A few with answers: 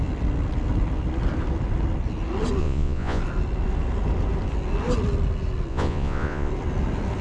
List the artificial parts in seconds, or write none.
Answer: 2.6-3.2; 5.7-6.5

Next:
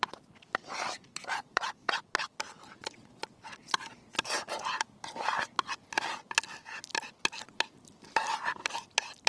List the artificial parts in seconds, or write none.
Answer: 1.1-1.9; 2.8-4.6

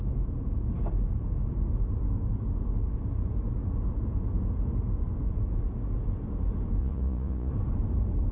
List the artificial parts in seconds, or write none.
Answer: 6.8-7.5

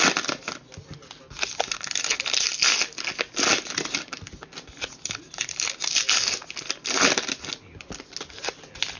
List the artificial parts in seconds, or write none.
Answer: none